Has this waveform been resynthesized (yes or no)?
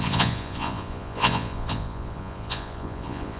yes